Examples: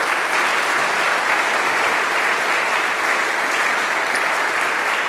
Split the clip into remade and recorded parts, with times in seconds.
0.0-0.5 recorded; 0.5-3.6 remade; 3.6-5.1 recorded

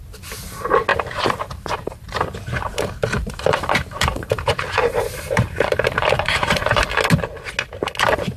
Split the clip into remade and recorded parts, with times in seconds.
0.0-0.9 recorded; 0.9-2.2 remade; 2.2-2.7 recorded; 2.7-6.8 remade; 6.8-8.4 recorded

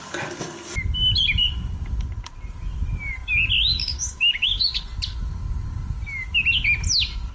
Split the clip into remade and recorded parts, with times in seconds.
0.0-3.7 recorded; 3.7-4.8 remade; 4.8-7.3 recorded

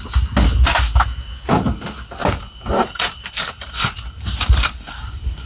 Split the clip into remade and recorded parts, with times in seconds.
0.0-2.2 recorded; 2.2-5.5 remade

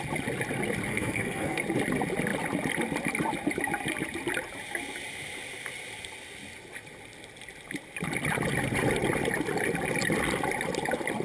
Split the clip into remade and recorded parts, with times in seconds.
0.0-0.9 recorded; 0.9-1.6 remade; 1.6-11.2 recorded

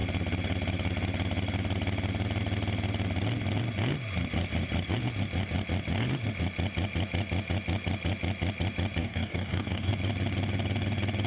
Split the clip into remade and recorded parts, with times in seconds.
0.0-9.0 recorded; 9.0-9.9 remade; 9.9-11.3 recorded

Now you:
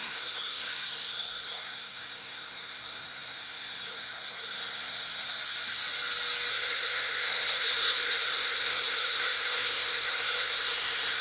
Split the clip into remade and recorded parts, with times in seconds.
0.0-5.8 remade; 5.8-6.5 recorded; 6.5-11.2 remade